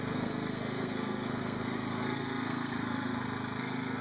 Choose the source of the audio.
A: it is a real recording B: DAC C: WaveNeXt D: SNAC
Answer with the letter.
D